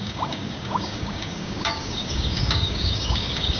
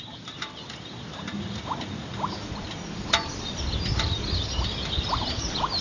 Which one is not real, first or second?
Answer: first